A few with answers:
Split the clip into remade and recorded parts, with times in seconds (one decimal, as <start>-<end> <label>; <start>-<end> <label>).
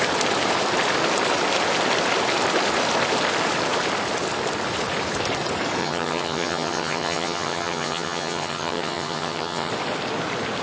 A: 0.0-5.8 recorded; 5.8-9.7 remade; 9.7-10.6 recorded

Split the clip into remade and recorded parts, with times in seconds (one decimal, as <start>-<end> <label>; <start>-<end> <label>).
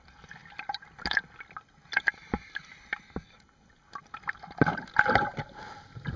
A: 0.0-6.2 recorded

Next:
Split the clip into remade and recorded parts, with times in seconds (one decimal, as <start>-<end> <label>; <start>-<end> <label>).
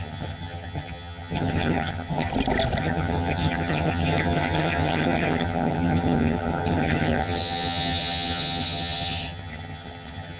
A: 0.0-2.3 remade; 2.3-2.8 recorded; 2.8-10.4 remade